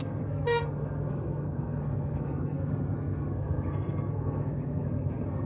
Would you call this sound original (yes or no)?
no